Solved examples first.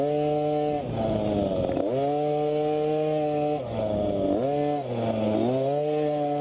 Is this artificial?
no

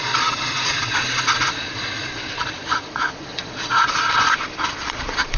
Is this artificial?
yes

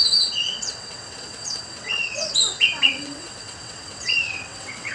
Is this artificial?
yes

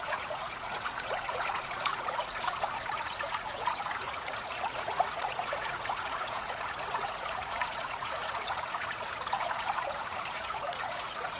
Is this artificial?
yes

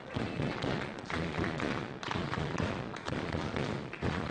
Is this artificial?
yes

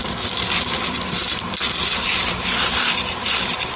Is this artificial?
yes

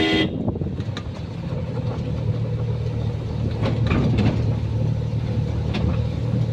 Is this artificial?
no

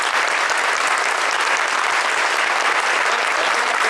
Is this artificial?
no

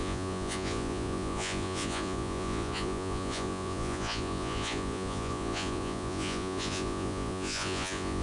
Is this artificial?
yes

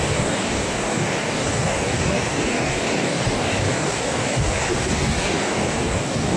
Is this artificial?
yes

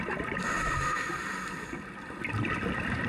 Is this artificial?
no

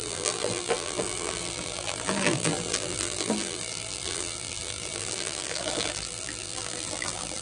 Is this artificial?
yes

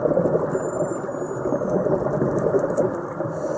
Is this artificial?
no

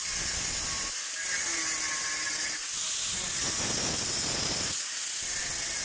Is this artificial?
no